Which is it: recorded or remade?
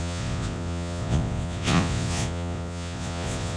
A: remade